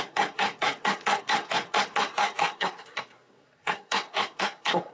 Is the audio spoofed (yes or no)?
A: yes